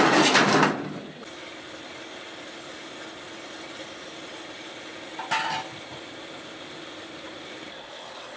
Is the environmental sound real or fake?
real